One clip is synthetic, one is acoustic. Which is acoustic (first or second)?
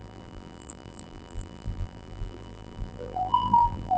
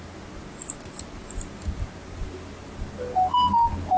second